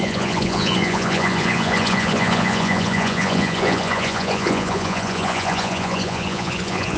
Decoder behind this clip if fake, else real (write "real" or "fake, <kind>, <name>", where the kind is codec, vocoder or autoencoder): fake, vocoder, Vocos